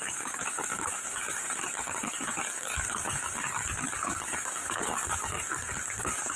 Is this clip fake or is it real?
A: fake